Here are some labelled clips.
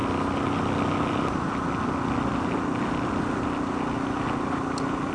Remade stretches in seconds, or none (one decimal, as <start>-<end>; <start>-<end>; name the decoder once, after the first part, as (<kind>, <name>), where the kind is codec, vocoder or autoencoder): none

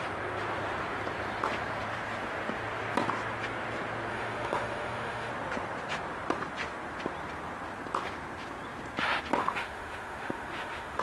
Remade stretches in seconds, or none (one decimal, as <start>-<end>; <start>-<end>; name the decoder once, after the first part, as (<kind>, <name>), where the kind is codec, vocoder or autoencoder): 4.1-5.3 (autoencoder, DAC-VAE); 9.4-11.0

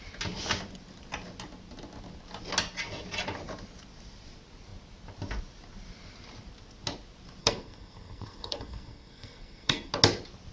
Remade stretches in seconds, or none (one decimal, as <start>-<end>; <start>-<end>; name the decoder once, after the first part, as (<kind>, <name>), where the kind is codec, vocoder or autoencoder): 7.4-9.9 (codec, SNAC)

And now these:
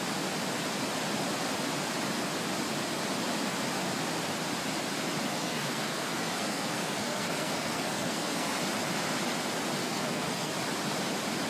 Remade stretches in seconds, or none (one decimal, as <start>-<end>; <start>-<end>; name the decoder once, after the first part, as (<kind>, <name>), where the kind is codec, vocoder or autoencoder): 5.3-8.6 (codec, SNAC); 9.8-10.5